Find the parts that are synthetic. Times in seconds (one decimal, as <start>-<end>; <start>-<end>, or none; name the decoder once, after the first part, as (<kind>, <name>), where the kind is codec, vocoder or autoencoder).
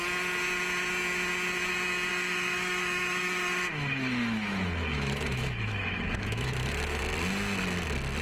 2.1-7.0 (autoencoder, DAC-VAE)